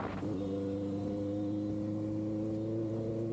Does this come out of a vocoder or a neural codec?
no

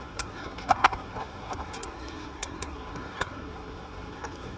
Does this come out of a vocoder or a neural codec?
yes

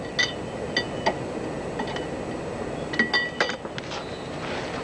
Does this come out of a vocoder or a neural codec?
no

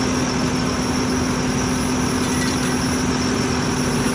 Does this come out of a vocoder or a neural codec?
no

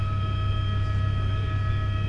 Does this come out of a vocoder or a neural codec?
no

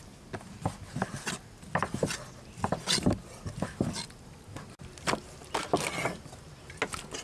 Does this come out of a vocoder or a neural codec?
no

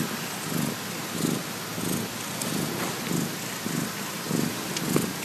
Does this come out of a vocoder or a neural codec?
no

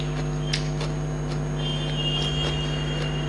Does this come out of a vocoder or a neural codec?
no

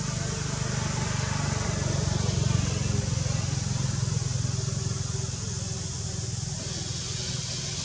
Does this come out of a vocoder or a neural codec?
no